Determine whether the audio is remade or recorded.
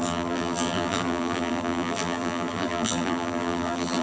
remade